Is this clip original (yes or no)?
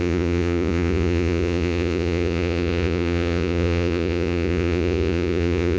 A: no